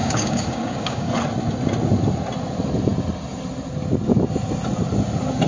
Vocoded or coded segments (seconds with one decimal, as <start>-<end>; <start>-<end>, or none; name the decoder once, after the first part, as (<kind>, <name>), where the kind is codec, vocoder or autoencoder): 0.0-1.1 (codec, DAC)